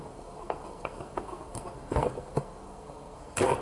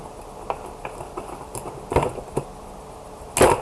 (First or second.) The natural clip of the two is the second